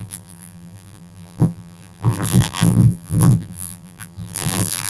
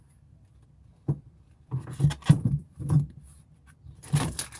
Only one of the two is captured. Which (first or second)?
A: second